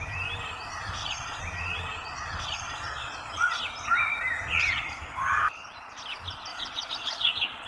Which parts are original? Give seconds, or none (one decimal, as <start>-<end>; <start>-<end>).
0.0-1.0; 3.6-4.5; 5.0-6.5